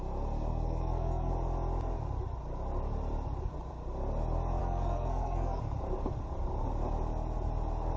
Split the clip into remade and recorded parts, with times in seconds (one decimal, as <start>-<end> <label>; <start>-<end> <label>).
0.0-0.5 recorded; 0.5-1.3 remade; 1.3-4.6 recorded; 4.6-5.6 remade; 5.6-8.0 recorded